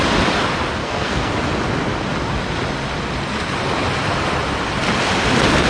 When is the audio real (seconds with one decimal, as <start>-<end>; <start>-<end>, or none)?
0.0-0.8; 1.3-5.7